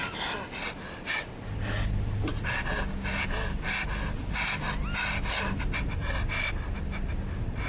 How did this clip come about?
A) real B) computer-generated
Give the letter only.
A